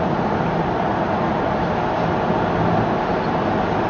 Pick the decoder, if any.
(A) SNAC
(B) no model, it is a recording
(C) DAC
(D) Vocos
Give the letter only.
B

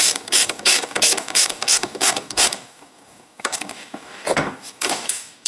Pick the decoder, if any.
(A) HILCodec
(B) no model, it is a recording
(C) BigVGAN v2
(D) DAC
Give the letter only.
D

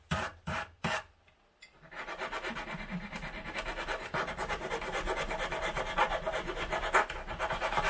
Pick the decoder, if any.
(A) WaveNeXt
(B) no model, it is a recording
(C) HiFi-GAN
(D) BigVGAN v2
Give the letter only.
B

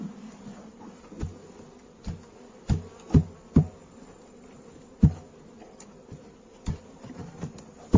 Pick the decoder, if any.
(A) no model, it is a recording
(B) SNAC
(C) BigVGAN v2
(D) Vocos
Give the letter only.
A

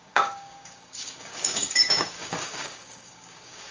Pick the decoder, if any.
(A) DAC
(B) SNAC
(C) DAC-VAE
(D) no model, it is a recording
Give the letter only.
A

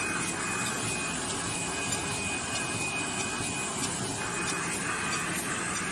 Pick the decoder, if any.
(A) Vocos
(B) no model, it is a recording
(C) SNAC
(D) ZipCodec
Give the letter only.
B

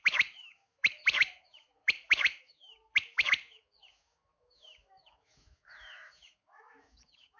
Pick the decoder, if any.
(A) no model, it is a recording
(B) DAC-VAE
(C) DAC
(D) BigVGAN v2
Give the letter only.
B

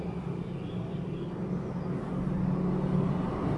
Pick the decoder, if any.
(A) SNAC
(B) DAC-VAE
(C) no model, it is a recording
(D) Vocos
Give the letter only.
C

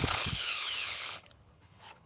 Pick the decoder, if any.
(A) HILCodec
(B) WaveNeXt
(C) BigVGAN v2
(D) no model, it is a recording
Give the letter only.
A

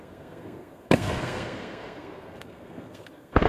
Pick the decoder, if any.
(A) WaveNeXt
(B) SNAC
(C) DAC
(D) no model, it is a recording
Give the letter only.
B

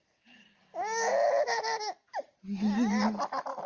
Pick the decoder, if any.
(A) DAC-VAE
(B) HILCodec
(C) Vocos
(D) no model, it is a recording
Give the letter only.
D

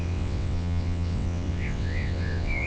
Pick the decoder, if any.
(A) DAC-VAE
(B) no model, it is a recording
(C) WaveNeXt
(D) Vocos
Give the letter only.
C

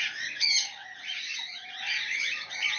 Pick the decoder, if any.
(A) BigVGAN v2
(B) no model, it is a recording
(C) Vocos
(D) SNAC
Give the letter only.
C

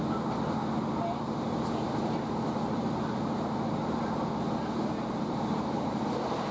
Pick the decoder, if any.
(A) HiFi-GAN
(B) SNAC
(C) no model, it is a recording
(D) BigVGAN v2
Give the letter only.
C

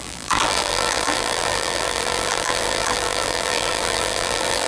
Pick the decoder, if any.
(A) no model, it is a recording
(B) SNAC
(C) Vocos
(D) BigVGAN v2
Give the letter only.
D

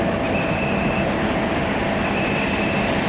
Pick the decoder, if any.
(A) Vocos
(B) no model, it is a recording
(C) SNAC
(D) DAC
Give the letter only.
B